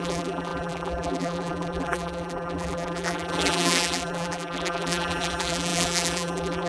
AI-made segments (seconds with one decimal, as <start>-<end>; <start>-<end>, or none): 0.0-6.7